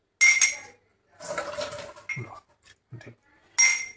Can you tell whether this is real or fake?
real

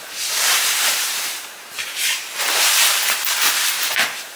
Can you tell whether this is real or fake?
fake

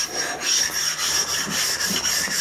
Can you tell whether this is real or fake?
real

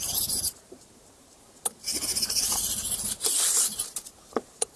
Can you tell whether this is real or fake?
fake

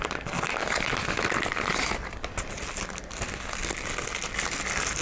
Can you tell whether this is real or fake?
real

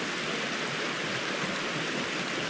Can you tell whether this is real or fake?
real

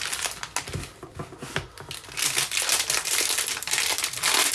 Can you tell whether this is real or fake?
real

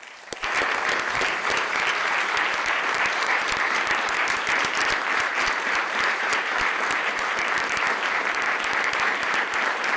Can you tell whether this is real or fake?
fake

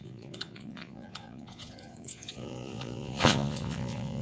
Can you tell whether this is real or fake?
fake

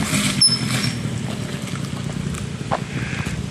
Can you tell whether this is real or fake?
real